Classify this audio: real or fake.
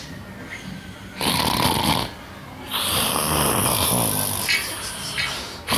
real